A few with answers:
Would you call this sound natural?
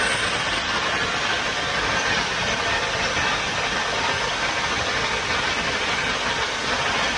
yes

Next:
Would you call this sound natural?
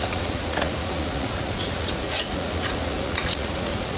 no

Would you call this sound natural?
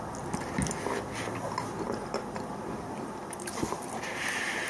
yes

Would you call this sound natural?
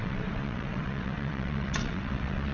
no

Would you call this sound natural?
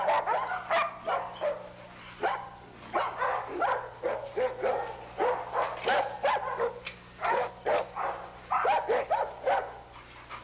yes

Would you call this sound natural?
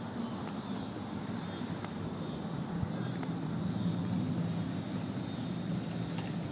yes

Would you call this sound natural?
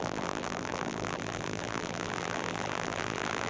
no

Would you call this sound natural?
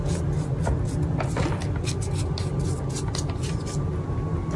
yes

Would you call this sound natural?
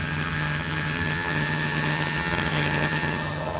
no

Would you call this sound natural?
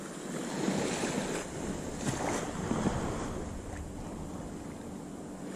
yes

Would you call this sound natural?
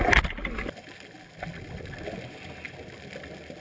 yes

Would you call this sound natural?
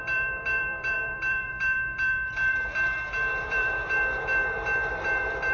no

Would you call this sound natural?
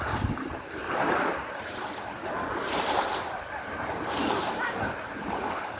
yes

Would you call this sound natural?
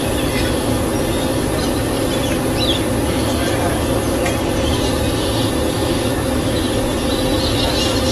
yes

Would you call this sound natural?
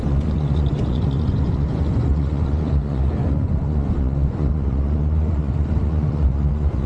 no